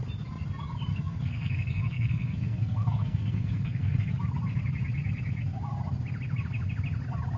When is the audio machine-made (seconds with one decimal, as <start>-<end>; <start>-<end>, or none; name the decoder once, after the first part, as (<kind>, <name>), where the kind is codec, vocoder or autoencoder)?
0.9-4.1 (codec, SNAC)